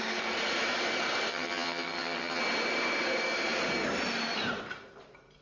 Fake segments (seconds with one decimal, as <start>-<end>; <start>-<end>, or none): 1.3-2.4

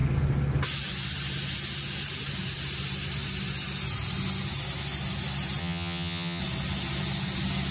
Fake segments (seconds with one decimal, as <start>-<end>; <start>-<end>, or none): 5.6-6.4

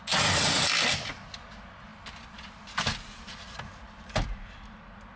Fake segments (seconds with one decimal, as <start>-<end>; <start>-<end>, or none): none